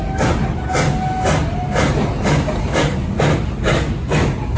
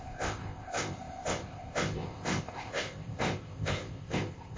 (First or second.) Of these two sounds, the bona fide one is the first